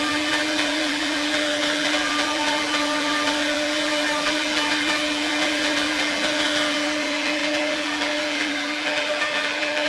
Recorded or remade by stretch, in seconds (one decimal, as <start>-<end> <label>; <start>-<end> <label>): 0.0-9.9 remade